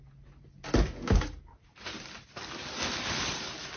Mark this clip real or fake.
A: real